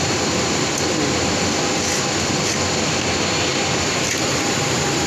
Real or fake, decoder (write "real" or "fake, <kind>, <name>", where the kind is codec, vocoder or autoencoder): real